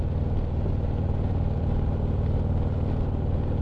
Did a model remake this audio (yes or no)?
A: no